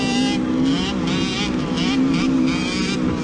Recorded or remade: recorded